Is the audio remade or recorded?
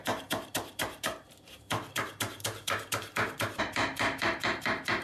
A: remade